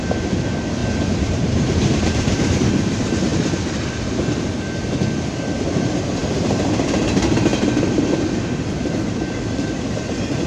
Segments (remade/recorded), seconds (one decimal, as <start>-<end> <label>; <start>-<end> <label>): 0.0-0.8 recorded; 0.8-2.5 remade; 2.5-10.5 recorded